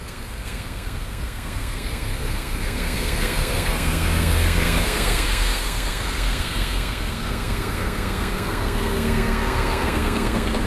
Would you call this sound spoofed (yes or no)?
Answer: yes